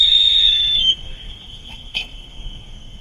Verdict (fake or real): fake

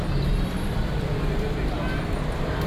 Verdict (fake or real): real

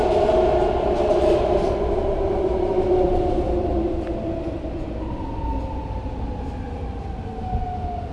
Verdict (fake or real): real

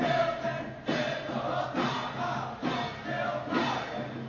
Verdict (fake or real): real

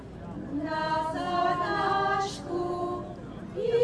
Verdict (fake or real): real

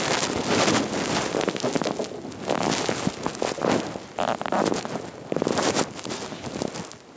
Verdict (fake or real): real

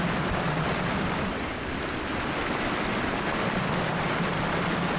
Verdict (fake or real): real